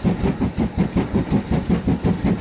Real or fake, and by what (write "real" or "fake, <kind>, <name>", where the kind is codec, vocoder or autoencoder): real